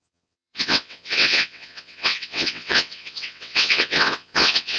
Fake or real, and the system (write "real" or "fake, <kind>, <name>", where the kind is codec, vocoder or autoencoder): fake, vocoder, WaveNeXt